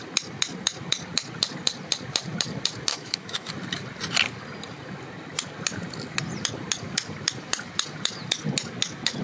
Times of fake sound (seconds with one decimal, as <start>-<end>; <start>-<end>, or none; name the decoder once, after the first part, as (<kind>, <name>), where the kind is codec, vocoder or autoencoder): 2.9-3.5 (autoencoder, DAC-VAE)